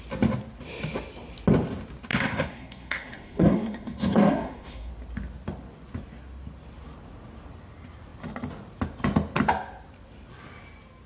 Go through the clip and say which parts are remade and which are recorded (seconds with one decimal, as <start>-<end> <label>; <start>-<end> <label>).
0.0-2.1 recorded; 2.1-4.9 remade; 4.9-11.1 recorded